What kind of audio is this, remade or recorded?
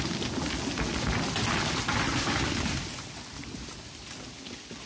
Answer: recorded